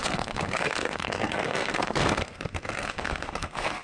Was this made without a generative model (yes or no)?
no